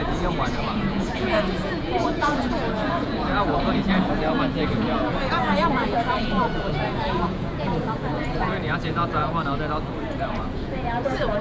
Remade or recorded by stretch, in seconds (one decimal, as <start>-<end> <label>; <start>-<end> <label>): 0.0-9.2 remade; 9.2-10.4 recorded; 10.4-11.4 remade